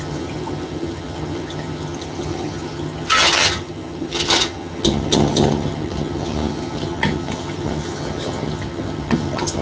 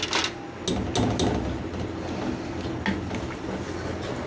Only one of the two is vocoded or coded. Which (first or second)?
first